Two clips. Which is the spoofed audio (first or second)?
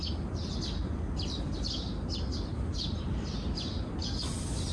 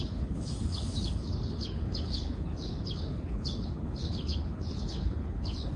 second